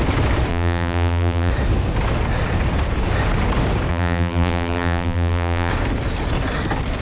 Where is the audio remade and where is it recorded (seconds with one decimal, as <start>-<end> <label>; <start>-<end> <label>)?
0.0-0.5 recorded; 0.5-1.5 remade; 1.5-3.9 recorded; 3.9-5.7 remade; 5.7-7.0 recorded